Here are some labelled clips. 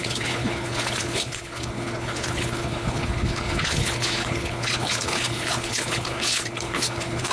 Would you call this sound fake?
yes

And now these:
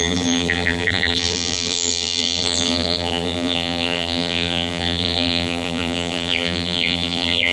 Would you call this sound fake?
yes